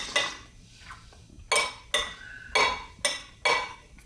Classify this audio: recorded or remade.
recorded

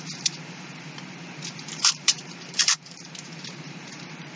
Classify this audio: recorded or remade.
remade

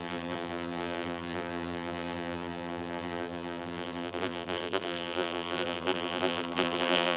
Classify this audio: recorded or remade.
remade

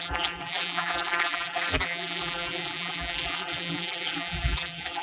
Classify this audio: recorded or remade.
remade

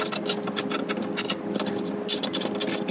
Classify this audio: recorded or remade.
recorded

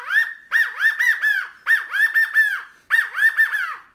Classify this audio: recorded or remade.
recorded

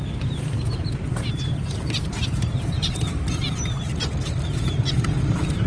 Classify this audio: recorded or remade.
remade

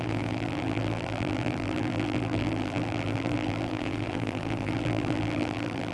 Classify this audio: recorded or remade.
remade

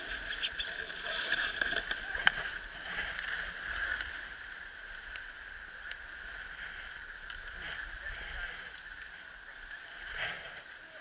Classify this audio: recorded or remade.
recorded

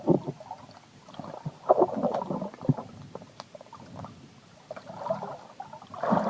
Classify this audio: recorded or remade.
remade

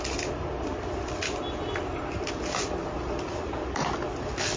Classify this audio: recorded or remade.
recorded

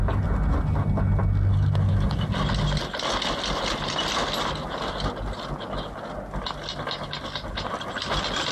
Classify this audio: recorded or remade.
recorded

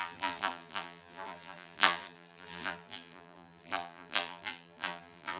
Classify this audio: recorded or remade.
remade